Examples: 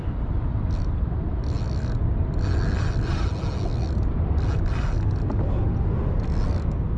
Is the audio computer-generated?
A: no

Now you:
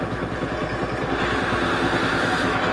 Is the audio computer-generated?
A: no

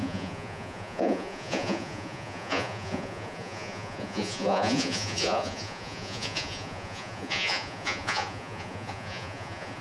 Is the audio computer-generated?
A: yes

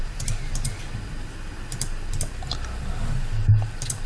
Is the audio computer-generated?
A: no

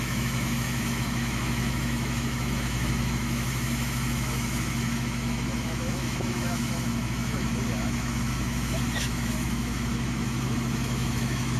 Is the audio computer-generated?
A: yes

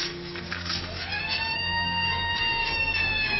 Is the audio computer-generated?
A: yes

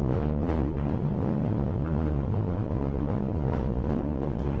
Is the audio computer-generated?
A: yes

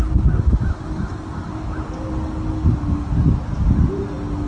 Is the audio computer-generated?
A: no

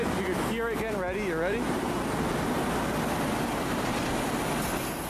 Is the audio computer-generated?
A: no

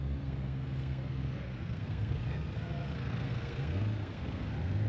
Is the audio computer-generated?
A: yes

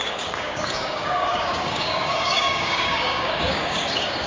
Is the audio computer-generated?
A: yes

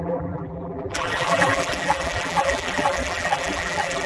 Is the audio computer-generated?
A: yes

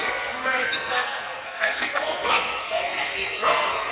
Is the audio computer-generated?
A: yes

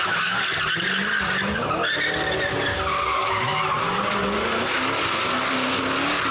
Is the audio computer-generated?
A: no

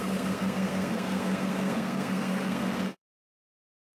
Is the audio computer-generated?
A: yes